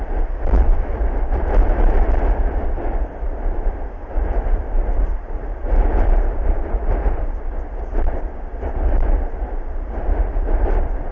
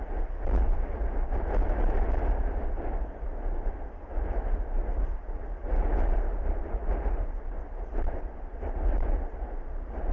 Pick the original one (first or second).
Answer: second